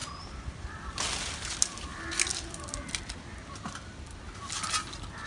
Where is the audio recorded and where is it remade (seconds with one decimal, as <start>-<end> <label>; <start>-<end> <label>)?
0.0-5.3 recorded